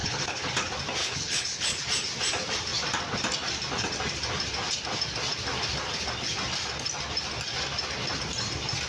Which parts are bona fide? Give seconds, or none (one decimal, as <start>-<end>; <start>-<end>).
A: 0.5-1.0; 1.8-8.9